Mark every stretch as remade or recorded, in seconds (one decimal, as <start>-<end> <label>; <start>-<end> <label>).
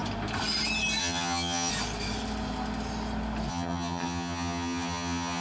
0.0-1.0 recorded; 1.0-1.7 remade; 1.7-3.5 recorded; 3.5-5.4 remade